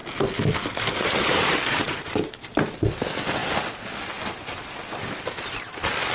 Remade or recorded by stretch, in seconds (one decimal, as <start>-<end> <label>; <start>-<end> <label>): 0.0-6.1 recorded